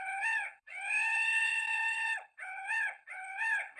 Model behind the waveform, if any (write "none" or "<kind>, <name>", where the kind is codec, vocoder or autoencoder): codec, HILCodec